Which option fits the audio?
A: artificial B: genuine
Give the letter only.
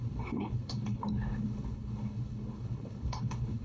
A